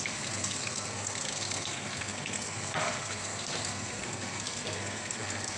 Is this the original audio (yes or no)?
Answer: no